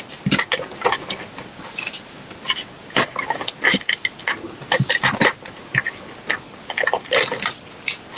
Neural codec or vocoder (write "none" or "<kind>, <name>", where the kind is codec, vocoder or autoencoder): none